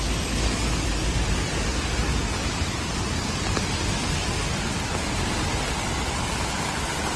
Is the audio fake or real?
real